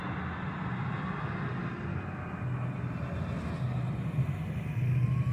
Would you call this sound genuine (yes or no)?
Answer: yes